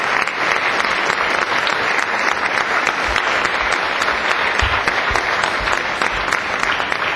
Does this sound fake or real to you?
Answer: real